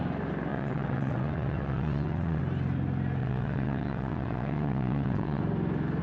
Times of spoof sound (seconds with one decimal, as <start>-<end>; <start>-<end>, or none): 0.5-2.4; 3.2-5.4